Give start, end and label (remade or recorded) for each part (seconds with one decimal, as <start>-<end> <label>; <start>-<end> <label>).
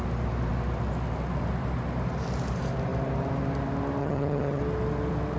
0.0-4.0 recorded; 4.0-4.6 remade; 4.6-5.4 recorded